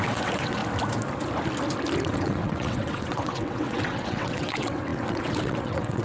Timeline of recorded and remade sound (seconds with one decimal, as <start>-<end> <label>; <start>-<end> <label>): 0.0-0.6 remade; 0.6-2.0 recorded; 2.0-6.0 remade